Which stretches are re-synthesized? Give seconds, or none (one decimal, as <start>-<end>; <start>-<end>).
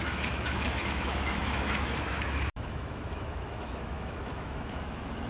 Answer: 0.0-5.3